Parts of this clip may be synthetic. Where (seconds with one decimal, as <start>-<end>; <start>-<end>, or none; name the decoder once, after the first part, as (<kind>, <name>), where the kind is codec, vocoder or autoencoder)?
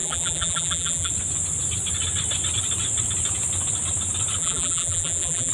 0.0-1.1 (vocoder, BigVGAN v2); 4.4-5.5